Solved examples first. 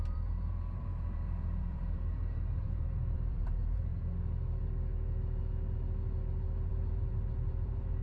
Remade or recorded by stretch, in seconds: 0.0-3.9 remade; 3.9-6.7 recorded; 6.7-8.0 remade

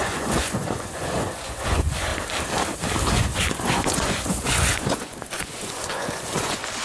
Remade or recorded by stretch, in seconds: 0.0-2.1 remade; 2.1-3.1 recorded; 3.1-6.8 remade

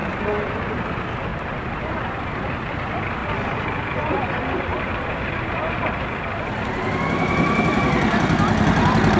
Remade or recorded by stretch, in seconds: 0.0-1.3 recorded; 1.3-2.7 remade; 2.7-3.2 recorded; 3.2-4.3 remade; 4.3-4.7 recorded; 4.7-6.0 remade; 6.0-9.2 recorded

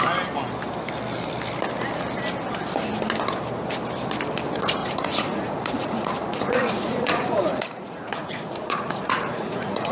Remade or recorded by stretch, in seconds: 0.0-4.8 recorded; 4.8-9.9 remade

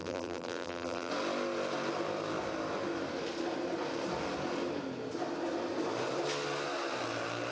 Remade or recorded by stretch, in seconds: 0.0-1.1 remade; 1.1-7.5 recorded